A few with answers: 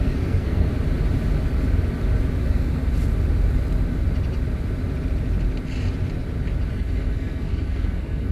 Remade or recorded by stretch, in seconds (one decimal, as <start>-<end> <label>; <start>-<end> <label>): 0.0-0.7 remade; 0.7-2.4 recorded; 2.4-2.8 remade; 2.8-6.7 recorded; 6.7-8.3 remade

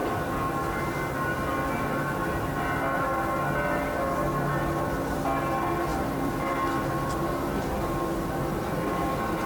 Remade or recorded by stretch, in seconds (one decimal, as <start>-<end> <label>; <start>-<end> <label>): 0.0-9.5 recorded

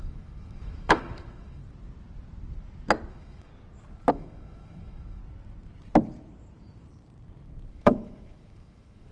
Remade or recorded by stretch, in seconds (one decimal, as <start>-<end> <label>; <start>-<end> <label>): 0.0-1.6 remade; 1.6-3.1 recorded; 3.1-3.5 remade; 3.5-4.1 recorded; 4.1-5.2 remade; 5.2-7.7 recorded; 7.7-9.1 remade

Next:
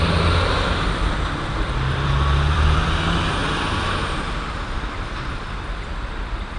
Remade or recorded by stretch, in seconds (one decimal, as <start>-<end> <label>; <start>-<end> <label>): 0.0-1.0 remade; 1.0-1.9 recorded; 1.9-3.4 remade; 3.4-5.6 recorded; 5.6-6.6 remade

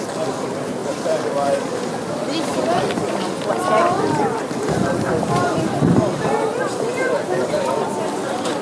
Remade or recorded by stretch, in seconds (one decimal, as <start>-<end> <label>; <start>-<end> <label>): 0.0-0.8 recorded; 0.8-1.8 remade; 1.8-2.5 recorded; 2.5-3.1 remade; 3.1-6.9 recorded; 6.9-7.8 remade; 7.8-8.6 recorded

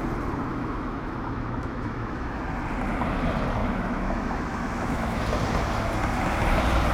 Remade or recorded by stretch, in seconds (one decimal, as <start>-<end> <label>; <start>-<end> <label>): 0.0-0.5 recorded; 0.5-2.4 remade; 2.4-3.6 recorded; 3.6-5.2 remade; 5.2-6.9 recorded

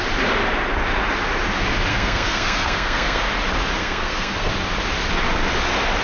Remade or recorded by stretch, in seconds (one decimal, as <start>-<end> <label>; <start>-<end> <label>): 0.0-1.9 recorded; 1.9-3.2 remade; 3.2-3.8 recorded; 3.8-4.5 remade; 4.5-6.0 recorded

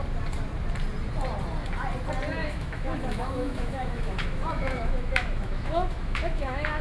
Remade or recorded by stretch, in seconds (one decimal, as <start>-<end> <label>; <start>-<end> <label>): 0.0-2.4 recorded; 2.4-6.8 remade